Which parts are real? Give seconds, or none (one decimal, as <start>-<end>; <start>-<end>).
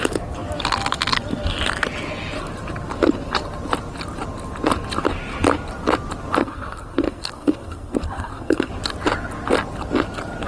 0.0-6.4; 8.7-10.5